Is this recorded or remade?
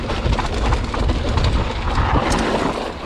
recorded